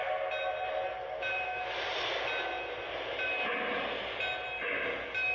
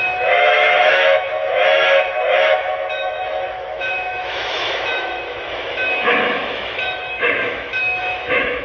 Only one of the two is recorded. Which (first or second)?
first